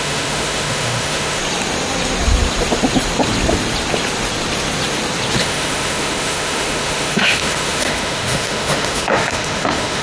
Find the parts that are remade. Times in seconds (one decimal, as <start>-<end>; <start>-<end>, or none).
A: 0.0-1.4; 5.4-10.0

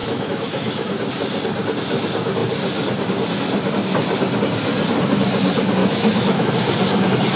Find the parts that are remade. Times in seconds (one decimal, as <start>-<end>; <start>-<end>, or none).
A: 0.0-1.1; 5.8-6.5

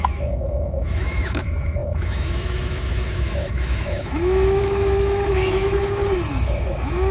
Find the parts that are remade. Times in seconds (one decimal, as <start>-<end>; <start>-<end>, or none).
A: 0.0-6.0; 6.6-7.1

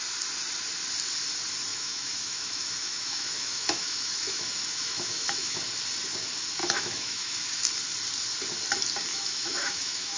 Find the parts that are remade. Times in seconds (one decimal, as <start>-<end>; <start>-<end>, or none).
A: 1.7-5.6; 6.6-7.6; 9.1-10.2

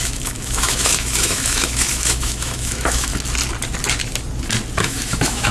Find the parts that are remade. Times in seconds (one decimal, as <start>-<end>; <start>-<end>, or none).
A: 0.0-3.1; 4.8-5.5